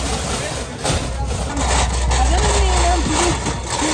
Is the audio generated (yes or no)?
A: no